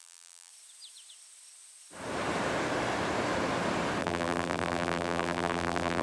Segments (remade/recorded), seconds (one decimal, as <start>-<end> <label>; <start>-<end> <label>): 0.0-0.5 remade; 0.5-4.0 recorded; 4.0-6.0 remade